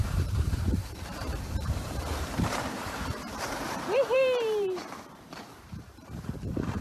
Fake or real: fake